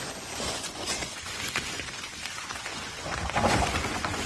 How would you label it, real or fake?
fake